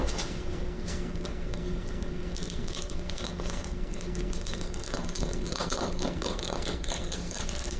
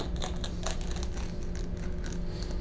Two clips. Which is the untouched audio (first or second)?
second